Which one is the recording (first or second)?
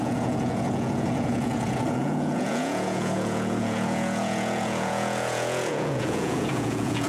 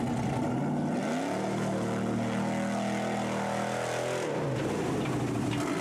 second